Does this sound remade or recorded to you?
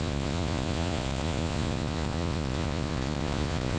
remade